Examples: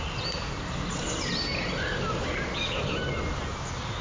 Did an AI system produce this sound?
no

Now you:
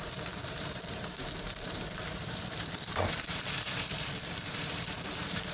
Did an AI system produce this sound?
yes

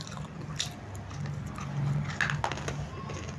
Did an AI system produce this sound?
no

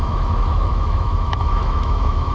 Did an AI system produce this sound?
yes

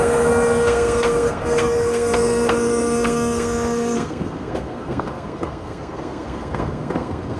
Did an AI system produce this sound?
yes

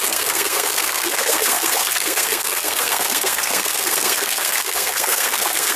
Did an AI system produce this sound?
yes